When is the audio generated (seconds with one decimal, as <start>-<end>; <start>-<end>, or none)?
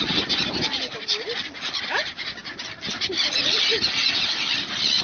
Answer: none